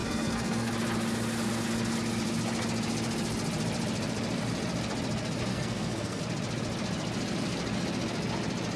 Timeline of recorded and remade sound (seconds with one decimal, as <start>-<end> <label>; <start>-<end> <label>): 0.0-0.7 remade; 0.7-5.5 recorded; 5.5-6.2 remade; 6.2-8.8 recorded